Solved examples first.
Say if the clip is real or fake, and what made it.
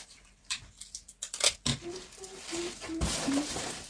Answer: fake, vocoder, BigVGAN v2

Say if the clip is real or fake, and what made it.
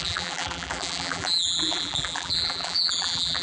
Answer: fake, vocoder, BigVGAN v2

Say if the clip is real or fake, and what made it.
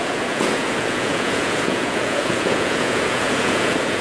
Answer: fake, vocoder, Vocos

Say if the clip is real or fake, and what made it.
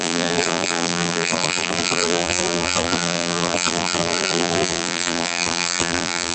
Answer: fake, vocoder, BigVGAN v2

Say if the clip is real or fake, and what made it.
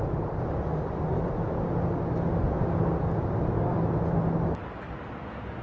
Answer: real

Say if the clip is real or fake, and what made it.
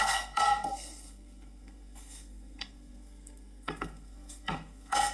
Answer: fake, codec, SNAC